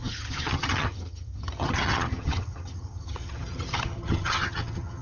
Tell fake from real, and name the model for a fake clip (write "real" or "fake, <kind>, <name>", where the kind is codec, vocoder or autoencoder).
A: fake, vocoder, HiFi-GAN